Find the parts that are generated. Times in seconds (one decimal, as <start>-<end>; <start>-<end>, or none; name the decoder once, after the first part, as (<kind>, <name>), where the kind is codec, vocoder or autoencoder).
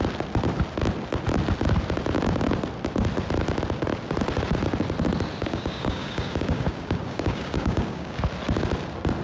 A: 5.4-8.2 (codec, DAC)